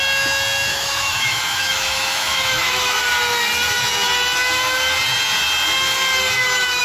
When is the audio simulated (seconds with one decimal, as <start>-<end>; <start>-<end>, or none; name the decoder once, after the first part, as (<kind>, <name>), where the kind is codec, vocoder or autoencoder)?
0.7-3.0 (autoencoder, DAC-VAE)